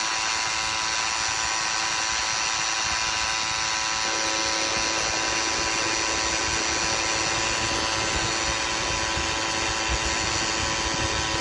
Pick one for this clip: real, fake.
real